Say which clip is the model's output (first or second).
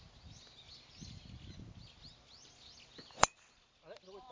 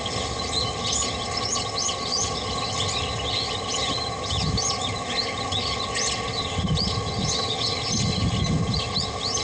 second